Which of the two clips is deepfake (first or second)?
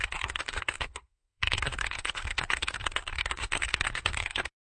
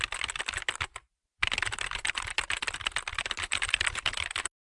first